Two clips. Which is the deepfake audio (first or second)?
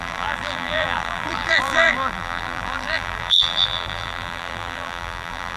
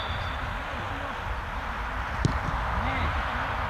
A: first